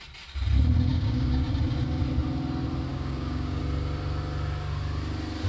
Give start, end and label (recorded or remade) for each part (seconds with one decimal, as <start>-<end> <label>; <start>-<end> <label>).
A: 0.0-0.9 recorded; 0.9-1.5 remade; 1.5-2.9 recorded; 2.9-3.6 remade; 3.6-5.5 recorded